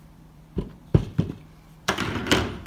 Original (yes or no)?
no